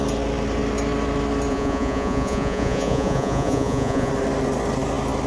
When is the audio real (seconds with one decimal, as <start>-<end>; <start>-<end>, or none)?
0.0-1.5; 4.1-5.3